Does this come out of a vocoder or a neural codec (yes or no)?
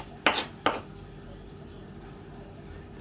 no